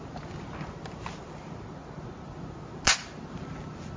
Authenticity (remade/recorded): recorded